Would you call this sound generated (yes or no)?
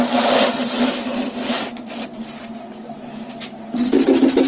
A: no